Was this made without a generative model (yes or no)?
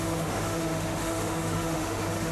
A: no